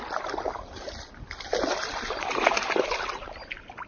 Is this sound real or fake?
real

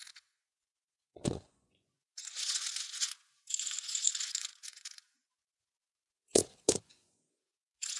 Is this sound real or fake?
fake